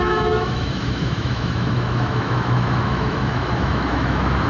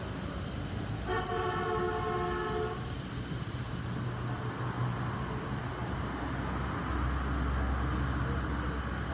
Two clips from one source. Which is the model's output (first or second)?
first